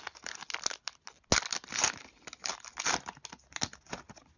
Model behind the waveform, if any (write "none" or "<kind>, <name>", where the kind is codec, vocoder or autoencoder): none